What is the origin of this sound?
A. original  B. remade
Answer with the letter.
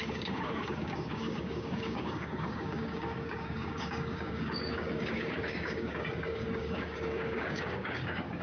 B